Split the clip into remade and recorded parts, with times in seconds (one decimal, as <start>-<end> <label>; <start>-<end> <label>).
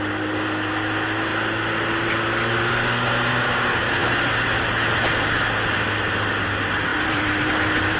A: 0.0-8.0 recorded